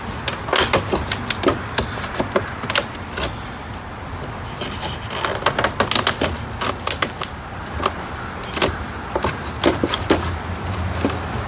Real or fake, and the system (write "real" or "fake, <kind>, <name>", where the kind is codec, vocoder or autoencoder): real